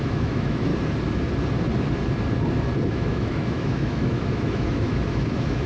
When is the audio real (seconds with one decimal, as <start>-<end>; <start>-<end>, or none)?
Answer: 0.7-2.9